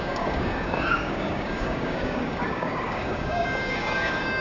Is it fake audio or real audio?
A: fake